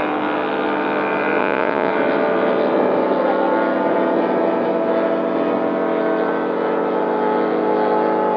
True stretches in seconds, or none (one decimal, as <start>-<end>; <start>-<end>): 0.0-1.4; 1.9-8.4